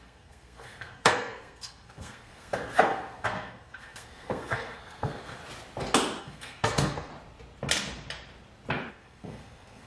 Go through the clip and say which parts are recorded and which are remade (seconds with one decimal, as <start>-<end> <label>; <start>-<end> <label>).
0.0-5.4 remade; 5.4-6.2 recorded; 6.2-7.1 remade; 7.1-8.9 recorded; 8.9-9.9 remade